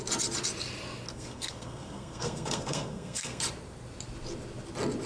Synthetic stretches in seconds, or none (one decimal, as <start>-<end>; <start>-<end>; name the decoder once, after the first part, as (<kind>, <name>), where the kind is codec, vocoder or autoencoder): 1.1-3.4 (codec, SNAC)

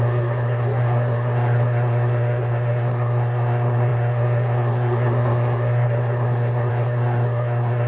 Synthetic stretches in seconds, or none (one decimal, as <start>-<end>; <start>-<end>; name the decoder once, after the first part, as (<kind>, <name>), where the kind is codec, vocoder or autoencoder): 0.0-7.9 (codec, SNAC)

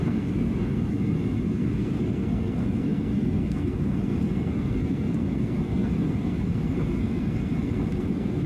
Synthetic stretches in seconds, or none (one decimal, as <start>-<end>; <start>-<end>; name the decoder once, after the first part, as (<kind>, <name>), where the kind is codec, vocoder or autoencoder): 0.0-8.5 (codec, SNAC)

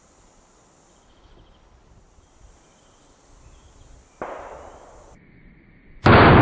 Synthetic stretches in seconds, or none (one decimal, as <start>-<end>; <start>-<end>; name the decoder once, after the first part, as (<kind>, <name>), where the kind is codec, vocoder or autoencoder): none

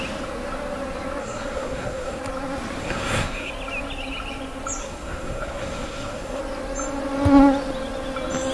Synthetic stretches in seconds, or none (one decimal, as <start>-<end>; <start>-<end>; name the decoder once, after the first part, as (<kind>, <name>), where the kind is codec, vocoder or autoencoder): 1.2-2.2 (codec, SNAC); 2.8-3.5; 4.8-6.4